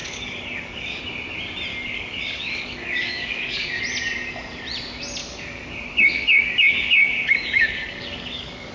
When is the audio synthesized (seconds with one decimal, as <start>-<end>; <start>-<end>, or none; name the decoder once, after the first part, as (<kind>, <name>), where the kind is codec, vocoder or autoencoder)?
0.0-1.0 (codec, DAC); 1.7-3.8; 5.2-8.7